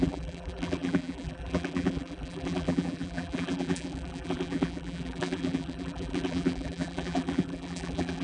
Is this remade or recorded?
remade